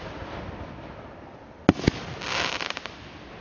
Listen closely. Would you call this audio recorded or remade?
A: recorded